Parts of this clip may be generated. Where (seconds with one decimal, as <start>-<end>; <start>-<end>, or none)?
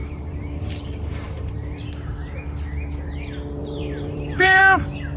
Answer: 0.0-1.8; 3.6-4.6